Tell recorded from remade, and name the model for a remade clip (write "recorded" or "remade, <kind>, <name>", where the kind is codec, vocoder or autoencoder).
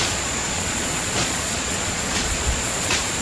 remade, vocoder, Vocos